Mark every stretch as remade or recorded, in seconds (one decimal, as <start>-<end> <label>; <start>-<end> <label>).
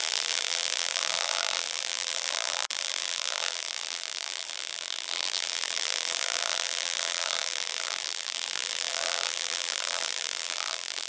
0.0-11.1 remade